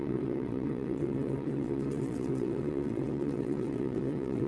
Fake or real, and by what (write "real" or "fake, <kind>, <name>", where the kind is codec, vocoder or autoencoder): fake, vocoder, WaveNeXt